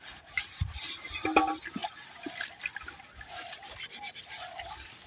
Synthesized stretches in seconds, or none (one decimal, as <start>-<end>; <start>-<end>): none